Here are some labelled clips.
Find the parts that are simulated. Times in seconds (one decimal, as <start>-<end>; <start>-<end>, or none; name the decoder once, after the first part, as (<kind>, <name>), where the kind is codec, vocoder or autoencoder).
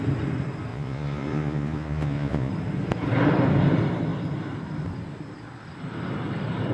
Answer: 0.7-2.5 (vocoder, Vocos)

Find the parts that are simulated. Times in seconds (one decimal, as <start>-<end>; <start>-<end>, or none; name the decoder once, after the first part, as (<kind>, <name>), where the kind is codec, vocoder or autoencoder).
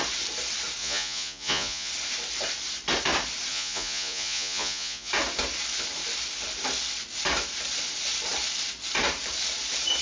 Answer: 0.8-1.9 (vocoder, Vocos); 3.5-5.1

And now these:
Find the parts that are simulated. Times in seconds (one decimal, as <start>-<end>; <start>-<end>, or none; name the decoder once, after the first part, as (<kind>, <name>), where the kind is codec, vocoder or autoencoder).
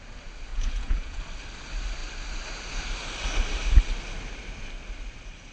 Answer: 0.5-1.2 (vocoder, Vocos)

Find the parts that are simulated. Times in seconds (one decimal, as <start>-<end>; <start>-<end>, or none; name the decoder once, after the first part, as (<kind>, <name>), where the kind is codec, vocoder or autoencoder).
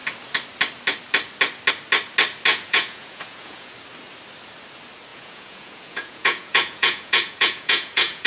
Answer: 2.5-3.7 (vocoder, Vocos); 5.1-8.3